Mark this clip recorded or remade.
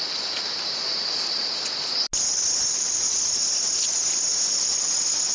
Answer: recorded